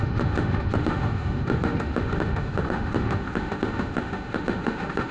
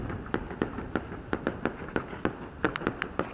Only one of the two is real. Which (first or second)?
second